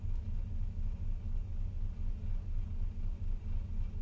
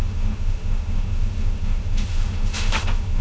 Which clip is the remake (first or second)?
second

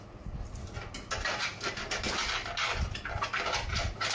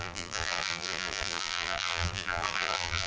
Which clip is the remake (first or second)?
second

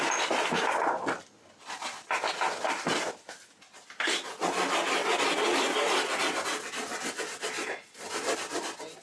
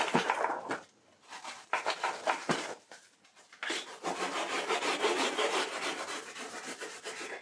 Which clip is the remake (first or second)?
second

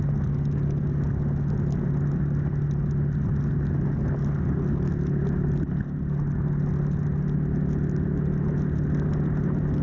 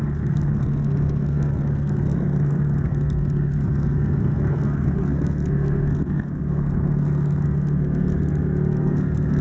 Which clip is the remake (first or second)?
second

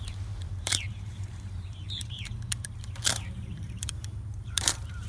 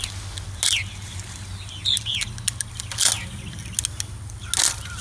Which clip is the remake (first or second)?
first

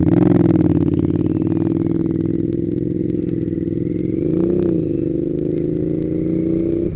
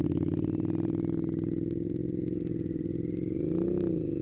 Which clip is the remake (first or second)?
second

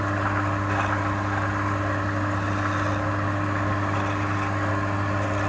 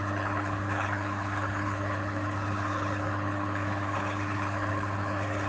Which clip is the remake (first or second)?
second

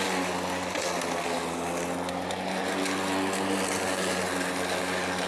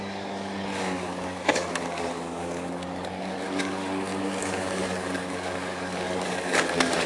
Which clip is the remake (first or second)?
second